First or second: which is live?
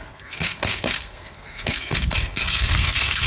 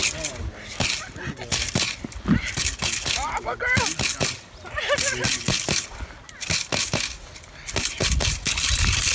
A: second